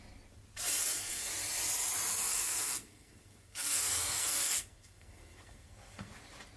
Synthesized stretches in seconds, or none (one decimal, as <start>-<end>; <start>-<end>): 0.8-1.3; 2.1-6.1